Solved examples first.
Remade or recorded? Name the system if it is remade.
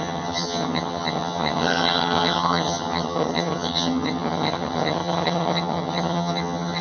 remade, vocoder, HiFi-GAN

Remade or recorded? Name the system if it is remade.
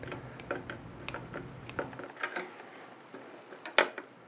recorded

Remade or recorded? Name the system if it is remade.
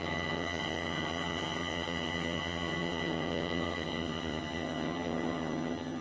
remade, vocoder, HiFi-GAN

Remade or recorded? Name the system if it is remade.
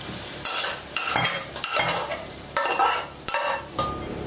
recorded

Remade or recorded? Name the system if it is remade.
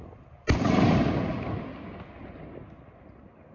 recorded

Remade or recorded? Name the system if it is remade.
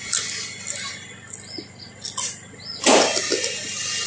recorded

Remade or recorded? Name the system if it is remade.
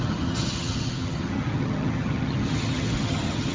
remade, vocoder, HiFi-GAN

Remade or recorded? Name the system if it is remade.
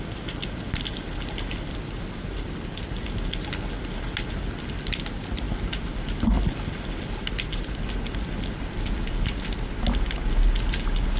recorded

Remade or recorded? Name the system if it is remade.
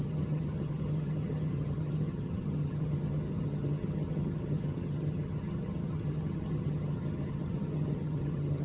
remade, vocoder, HiFi-GAN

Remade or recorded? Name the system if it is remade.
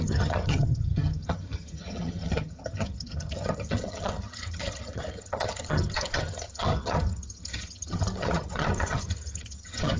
remade, vocoder, HiFi-GAN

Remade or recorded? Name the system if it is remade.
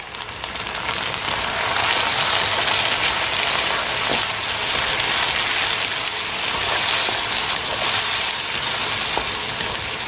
recorded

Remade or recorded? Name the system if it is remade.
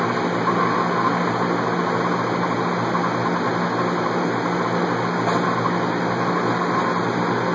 recorded